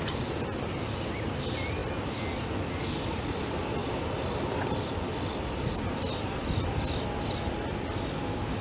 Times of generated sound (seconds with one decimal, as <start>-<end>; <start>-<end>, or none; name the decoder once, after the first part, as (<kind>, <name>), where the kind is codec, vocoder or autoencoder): none